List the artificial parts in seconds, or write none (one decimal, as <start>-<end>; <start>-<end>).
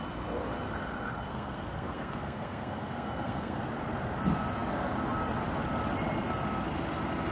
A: 1.3-3.6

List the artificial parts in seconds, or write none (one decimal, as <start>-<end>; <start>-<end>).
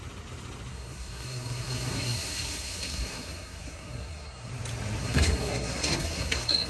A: 0.7-4.5; 5.0-6.7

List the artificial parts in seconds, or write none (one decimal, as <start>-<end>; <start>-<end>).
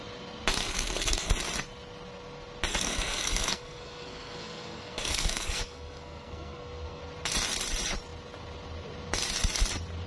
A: 0.5-1.3; 2.7-7.0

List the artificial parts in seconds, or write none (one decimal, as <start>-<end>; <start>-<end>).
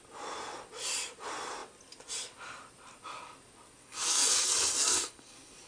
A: 3.8-5.7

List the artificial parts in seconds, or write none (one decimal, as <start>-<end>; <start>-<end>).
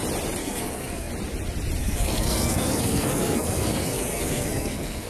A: 0.4-1.1; 1.8-5.1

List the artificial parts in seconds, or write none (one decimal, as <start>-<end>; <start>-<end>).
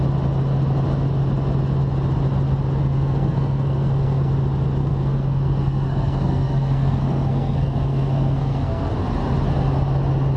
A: 2.8-4.3; 4.8-8.9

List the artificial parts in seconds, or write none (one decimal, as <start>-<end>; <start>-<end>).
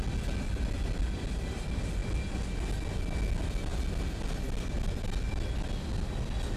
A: none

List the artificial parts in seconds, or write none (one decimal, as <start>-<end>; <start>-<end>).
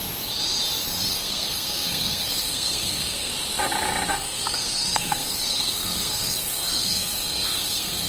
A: 1.1-3.3; 4.1-8.1